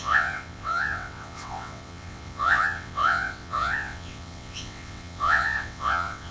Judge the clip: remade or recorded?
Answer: remade